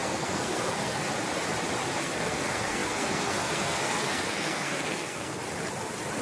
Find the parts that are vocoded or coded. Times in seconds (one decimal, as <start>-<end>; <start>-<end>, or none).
0.0-1.0; 2.0-5.4